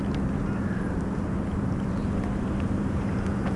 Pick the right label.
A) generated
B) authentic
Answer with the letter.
B